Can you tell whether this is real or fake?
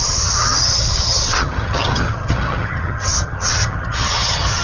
fake